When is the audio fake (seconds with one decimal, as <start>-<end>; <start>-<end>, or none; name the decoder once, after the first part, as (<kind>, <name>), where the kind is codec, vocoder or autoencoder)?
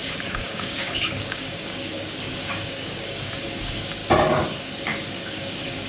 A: 0.0-4.0 (codec, DAC); 4.6-5.9